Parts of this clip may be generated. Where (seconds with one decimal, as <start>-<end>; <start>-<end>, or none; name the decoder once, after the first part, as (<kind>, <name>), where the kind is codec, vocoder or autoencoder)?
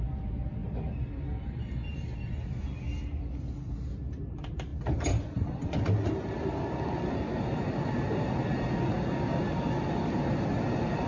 none